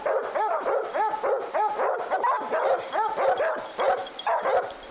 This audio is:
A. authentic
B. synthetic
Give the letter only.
A